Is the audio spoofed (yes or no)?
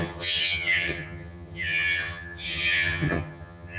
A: yes